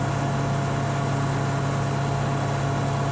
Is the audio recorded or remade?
recorded